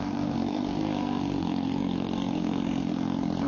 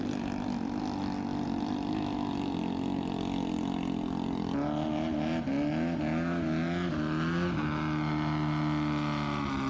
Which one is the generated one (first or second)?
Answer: first